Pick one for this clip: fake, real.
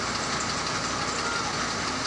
real